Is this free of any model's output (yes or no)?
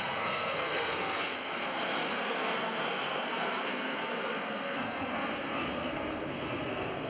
no